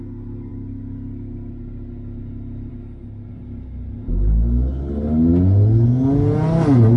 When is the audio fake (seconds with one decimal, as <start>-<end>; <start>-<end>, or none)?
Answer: none

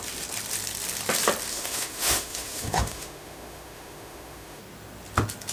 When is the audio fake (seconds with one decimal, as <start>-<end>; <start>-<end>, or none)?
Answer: 1.5-4.6

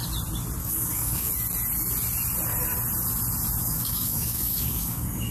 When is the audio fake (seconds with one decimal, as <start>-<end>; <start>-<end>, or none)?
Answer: 0.6-1.3; 3.6-5.3